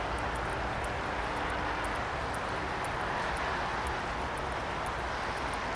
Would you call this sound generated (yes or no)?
no